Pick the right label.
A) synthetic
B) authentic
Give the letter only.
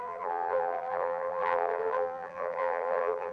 A